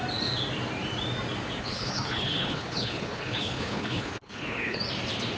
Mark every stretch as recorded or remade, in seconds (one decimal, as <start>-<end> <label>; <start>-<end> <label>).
0.0-1.6 recorded; 1.6-4.8 remade; 4.8-5.4 recorded